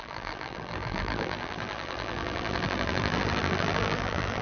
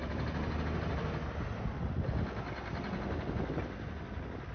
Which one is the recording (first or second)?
second